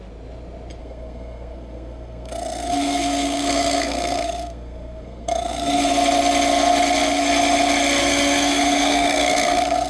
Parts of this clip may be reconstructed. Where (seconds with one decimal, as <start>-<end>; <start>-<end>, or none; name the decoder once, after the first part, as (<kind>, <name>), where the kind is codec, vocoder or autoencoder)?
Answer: 0.8-5.9 (codec, SNAC); 8.0-9.9